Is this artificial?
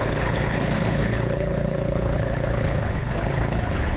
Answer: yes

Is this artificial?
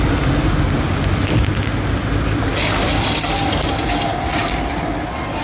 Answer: no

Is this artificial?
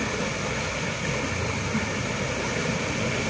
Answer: no